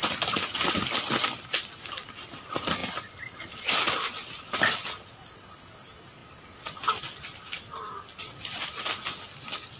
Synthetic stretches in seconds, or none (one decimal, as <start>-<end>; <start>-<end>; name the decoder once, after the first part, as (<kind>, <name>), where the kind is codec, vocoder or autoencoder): none